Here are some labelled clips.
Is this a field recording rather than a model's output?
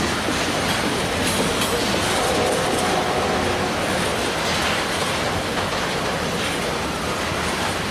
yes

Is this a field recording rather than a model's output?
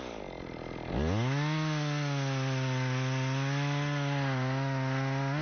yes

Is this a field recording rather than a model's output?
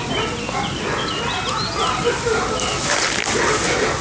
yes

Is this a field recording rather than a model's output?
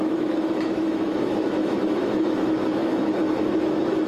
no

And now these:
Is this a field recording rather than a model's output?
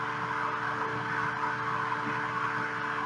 yes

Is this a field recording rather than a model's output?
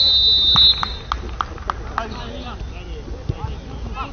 yes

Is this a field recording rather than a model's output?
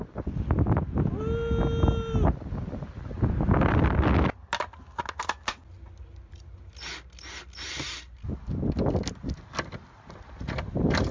yes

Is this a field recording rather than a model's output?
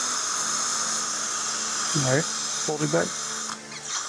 yes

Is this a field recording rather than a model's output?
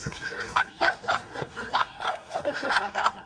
no